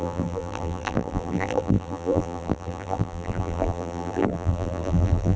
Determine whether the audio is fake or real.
fake